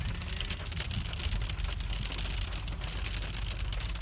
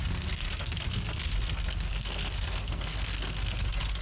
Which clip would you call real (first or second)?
first